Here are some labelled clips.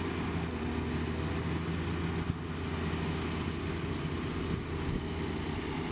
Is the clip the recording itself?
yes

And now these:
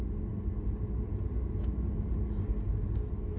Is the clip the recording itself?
yes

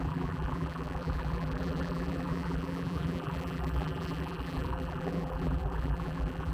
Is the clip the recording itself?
no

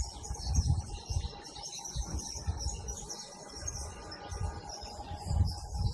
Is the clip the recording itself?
no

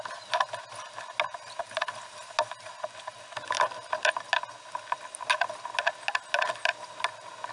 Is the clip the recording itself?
yes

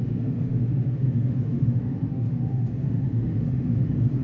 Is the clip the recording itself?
no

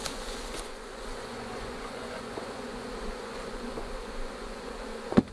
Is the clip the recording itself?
no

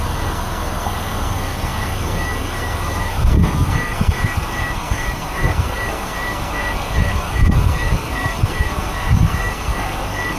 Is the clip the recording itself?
no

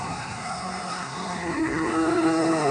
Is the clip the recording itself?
no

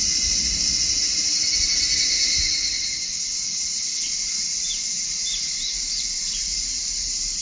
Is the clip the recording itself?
no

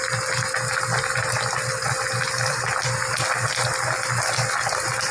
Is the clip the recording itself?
yes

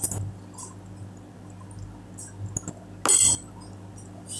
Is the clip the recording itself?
yes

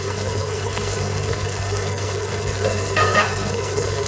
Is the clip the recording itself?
no